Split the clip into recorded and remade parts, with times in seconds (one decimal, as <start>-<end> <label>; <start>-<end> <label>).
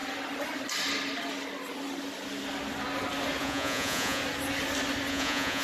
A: 0.0-3.4 recorded; 3.4-4.2 remade; 4.2-5.1 recorded; 5.1-5.6 remade